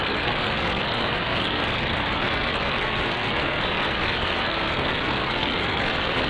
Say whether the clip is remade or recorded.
remade